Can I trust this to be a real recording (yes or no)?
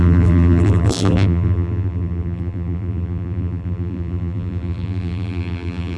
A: no